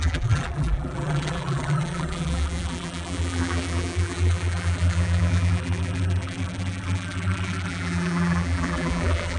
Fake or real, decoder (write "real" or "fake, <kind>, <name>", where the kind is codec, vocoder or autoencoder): fake, vocoder, BigVGAN v2